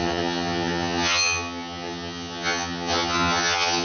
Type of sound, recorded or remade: remade